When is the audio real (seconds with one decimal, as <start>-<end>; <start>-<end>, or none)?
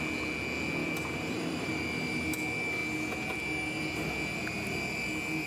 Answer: 0.0-0.8; 1.7-5.5